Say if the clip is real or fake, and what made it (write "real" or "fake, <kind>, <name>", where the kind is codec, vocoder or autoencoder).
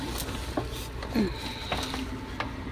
real